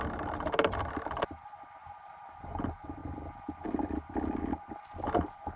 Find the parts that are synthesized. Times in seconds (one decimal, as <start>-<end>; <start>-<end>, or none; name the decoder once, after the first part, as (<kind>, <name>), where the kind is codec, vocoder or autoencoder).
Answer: 1.8-2.6 (vocoder, BigVGAN v2)